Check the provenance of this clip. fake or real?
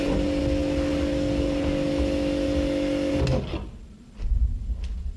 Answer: real